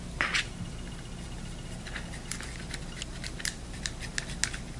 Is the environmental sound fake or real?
real